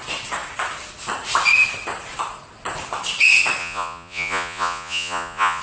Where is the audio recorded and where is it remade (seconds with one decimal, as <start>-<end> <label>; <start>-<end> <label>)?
0.0-3.6 recorded; 3.6-5.6 remade